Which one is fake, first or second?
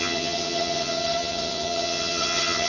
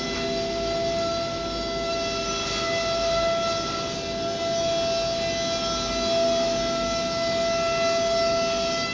first